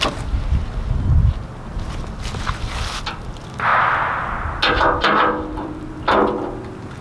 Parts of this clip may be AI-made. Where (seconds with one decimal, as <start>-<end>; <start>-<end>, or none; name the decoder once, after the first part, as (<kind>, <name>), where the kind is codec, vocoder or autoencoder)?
none